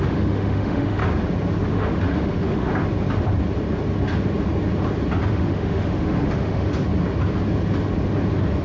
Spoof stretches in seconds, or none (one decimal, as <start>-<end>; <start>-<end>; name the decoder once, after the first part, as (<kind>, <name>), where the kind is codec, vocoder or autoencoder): 0.0-1.0 (autoencoder, DAC-VAE); 1.7-2.7; 5.3-6.8